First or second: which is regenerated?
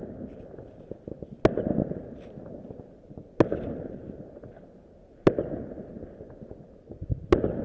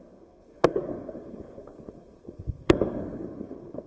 second